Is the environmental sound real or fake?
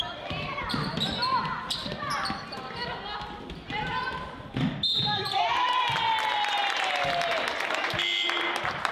real